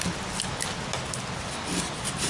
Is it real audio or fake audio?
real